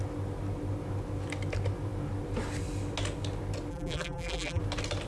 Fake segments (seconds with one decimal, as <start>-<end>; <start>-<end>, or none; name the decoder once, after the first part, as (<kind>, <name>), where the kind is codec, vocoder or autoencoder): 3.7-4.6 (vocoder, BigVGAN v2)

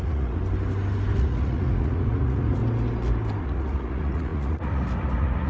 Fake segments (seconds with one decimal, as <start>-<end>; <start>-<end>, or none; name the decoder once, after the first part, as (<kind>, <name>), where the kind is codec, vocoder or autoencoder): 0.0-0.4 (vocoder, Vocos); 1.2-2.6; 3.4-5.5

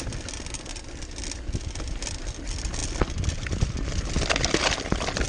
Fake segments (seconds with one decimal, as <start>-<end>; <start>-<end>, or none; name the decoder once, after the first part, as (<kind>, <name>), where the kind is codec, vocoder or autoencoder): 0.7-2.2 (vocoder, BigVGAN v2)

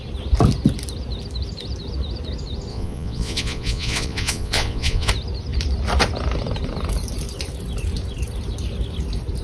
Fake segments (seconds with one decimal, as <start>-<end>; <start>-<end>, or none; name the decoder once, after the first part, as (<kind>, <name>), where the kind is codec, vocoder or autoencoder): 2.7-5.1 (vocoder, Vocos)